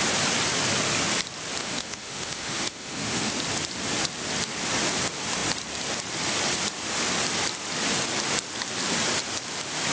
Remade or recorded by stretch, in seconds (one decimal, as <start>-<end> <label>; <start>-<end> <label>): 0.0-1.6 recorded; 1.6-3.3 remade; 3.3-9.9 recorded